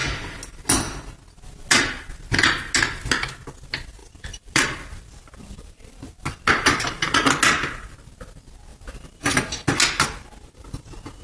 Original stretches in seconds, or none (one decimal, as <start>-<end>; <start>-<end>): 0.0-4.0; 6.0-8.7; 9.3-11.2